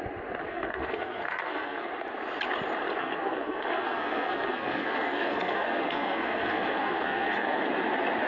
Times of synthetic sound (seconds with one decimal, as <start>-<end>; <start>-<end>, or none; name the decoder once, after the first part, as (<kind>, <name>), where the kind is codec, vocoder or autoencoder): 0.5-1.9 (codec, SNAC); 3.0-7.6